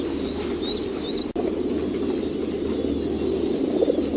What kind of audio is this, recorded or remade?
recorded